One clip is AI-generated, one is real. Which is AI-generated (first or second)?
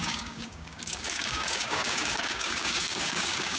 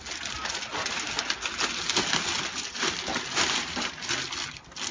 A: first